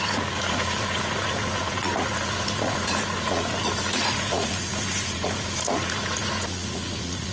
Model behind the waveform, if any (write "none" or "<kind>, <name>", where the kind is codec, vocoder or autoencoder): vocoder, Vocos